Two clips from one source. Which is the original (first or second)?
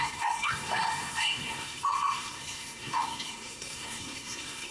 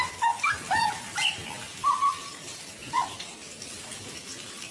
second